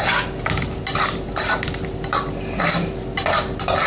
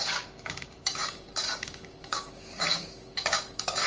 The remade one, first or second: second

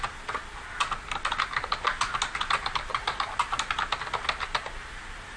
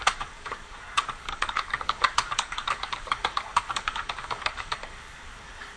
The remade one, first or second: second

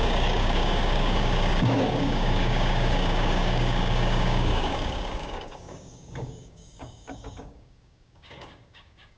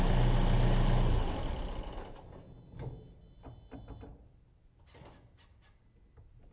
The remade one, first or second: first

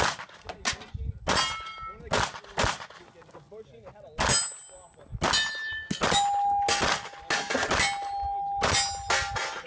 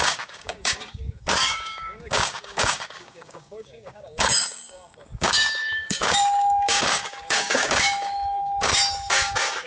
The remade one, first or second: second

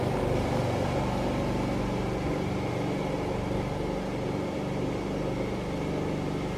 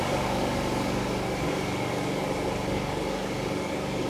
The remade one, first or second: second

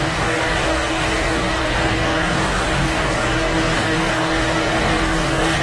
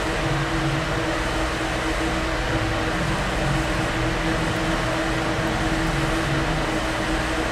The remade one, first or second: first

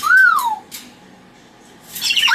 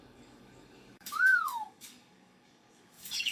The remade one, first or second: second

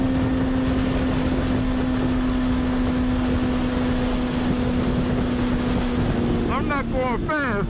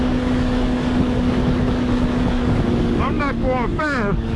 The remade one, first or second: second